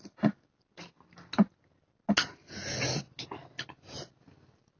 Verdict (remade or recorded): recorded